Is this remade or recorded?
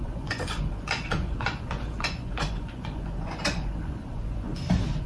remade